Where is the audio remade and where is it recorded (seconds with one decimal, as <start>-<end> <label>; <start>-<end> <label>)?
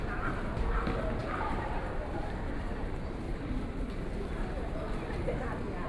0.0-1.2 recorded; 1.2-4.7 remade; 4.7-5.9 recorded